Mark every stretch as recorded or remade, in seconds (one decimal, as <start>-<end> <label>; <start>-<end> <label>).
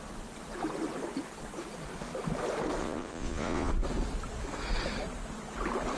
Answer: 0.0-2.8 recorded; 2.8-3.7 remade; 3.7-6.0 recorded